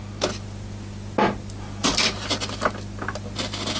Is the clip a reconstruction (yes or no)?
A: no